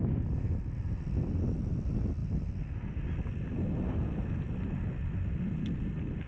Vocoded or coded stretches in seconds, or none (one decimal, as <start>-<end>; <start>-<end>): none